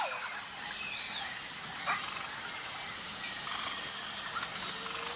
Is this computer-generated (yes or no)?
no